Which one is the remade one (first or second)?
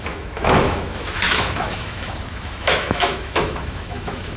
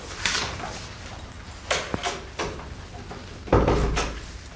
first